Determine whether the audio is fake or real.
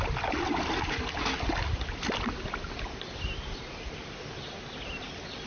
real